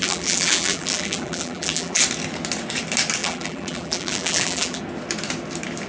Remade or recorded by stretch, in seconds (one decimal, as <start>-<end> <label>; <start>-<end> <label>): 0.0-2.0 remade; 2.0-3.2 recorded; 3.2-4.8 remade; 4.8-5.9 recorded

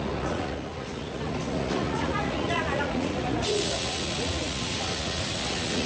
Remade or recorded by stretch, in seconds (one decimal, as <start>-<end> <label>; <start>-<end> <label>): 0.0-5.9 remade

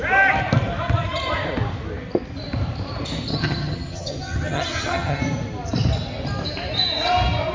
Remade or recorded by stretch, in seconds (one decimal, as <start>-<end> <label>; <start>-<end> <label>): 0.0-3.3 recorded; 3.3-5.2 remade; 5.2-7.5 recorded

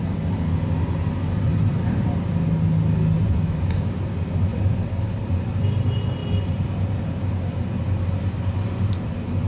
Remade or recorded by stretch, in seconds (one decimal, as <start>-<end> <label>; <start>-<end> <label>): 0.0-9.5 recorded

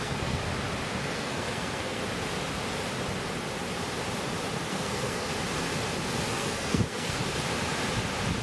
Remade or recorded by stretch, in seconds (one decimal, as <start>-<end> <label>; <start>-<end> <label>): 0.0-0.4 remade; 0.4-1.0 recorded; 1.0-2.0 remade; 2.0-4.7 recorded; 4.7-5.3 remade; 5.3-6.3 recorded; 6.3-7.2 remade; 7.2-8.4 recorded

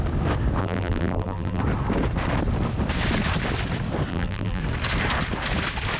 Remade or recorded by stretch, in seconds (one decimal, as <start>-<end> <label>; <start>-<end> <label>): 0.0-0.6 recorded; 0.6-1.6 remade; 1.6-4.1 recorded; 4.1-4.6 remade; 4.6-6.0 recorded